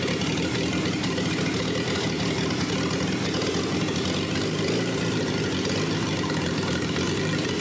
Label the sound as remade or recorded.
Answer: recorded